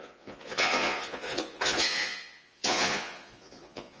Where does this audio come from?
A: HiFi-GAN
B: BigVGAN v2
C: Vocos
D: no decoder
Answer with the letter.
C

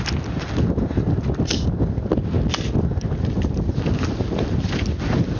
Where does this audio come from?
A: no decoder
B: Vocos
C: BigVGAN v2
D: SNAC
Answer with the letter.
A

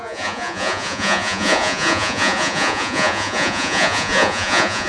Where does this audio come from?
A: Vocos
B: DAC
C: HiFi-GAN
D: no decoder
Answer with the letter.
A